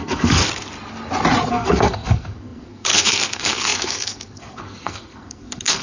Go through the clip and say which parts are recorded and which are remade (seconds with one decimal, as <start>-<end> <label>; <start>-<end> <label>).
0.0-0.4 remade; 0.4-1.5 recorded; 1.5-5.8 remade